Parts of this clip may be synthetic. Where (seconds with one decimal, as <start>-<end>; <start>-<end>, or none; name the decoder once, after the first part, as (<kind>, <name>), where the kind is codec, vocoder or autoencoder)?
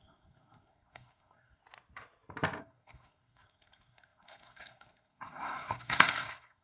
0.0-1.6 (codec, SNAC); 2.6-6.6